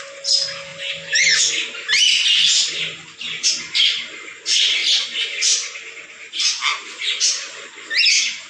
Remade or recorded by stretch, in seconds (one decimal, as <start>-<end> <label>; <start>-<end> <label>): 0.0-8.5 recorded